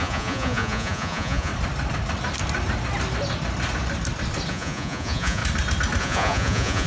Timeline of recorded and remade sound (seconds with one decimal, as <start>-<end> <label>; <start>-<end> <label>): 0.0-1.5 remade; 1.5-4.5 recorded; 4.5-5.4 remade; 5.4-6.0 recorded; 6.0-6.9 remade